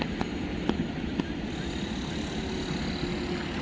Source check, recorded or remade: recorded